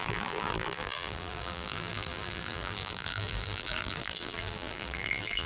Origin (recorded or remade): remade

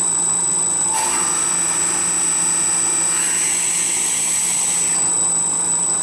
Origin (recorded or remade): recorded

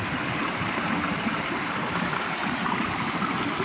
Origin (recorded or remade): remade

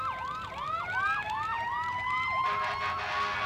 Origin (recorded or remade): recorded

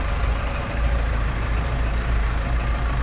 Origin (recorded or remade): remade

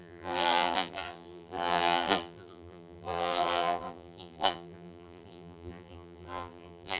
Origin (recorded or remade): remade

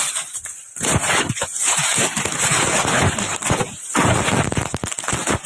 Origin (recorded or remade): recorded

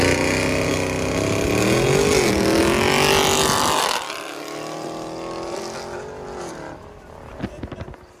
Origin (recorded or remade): recorded